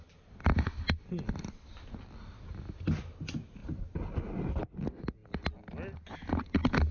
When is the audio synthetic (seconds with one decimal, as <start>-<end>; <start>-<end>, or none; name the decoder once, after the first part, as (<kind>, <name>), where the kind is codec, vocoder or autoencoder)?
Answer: none